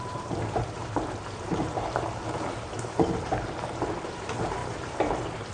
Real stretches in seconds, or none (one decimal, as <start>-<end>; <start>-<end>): none